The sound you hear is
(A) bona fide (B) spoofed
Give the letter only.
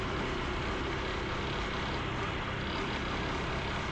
A